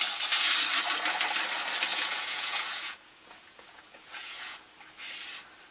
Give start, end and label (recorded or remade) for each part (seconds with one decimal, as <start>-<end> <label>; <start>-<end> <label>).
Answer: 0.0-1.9 recorded; 1.9-4.7 remade; 4.7-5.7 recorded